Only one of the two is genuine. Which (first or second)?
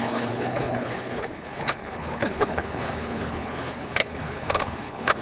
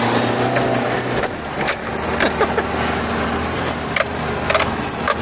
second